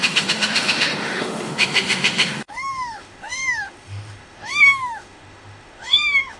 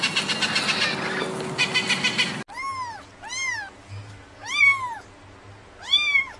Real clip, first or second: second